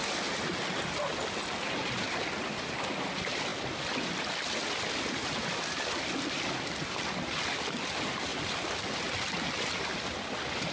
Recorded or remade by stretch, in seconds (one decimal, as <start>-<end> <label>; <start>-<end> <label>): 0.0-10.7 recorded